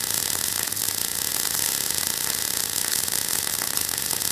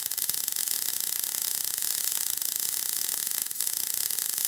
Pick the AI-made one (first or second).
second